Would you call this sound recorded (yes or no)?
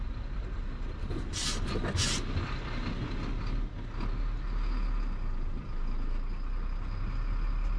yes